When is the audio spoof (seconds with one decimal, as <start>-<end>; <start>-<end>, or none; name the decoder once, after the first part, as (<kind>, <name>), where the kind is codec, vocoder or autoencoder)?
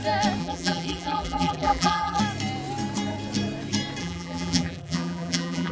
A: 0.4-2.2 (vocoder, BigVGAN v2); 4.0-5.7